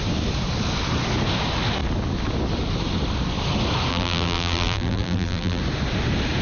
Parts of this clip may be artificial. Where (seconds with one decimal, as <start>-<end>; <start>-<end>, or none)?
3.9-5.6